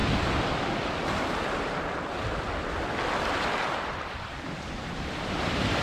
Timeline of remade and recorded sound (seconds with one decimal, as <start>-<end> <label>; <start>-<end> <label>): 0.0-3.3 recorded; 3.3-5.8 remade